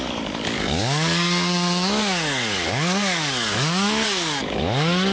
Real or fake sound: fake